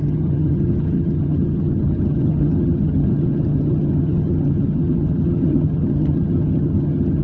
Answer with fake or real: fake